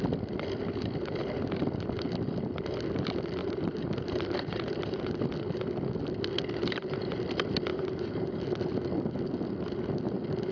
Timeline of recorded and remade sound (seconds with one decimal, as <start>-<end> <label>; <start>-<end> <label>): 0.0-3.4 recorded; 3.4-5.2 remade; 5.2-6.6 recorded; 6.6-7.2 remade; 7.2-7.7 recorded; 7.7-8.3 remade; 8.3-10.5 recorded